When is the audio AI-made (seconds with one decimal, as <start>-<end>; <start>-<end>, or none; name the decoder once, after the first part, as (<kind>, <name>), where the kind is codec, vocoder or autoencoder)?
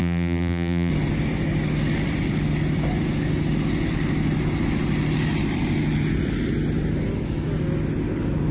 0.0-0.9 (vocoder, BigVGAN v2)